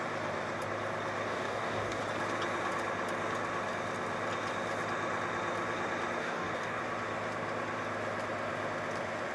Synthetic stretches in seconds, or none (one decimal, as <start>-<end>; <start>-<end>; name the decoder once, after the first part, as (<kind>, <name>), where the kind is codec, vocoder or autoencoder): 1.3-2.0 (codec, DAC); 6.2-6.8